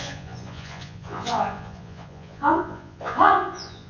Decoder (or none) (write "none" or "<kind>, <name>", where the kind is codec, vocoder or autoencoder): vocoder, Vocos